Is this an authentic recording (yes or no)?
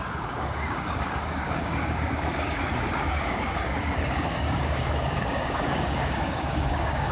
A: no